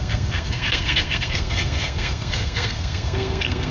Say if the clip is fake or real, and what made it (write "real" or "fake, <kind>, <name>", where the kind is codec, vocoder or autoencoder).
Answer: fake, codec, SNAC